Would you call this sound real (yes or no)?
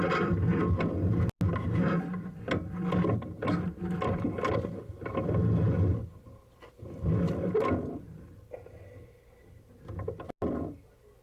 yes